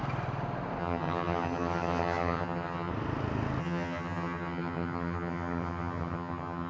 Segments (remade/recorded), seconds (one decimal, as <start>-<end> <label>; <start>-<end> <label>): 0.0-0.8 recorded; 0.8-2.9 remade; 2.9-3.6 recorded; 3.6-6.7 remade